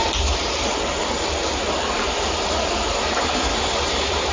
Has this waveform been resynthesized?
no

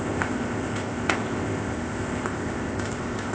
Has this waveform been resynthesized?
yes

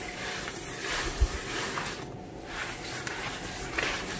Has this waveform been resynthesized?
no